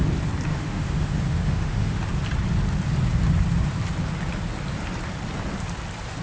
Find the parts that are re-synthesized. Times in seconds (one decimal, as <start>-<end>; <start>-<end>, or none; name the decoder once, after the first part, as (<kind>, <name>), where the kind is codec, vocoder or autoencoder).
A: 0.5-2.0 (autoencoder, DAC-VAE)